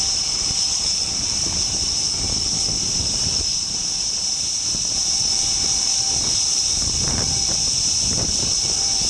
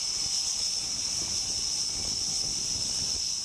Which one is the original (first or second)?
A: second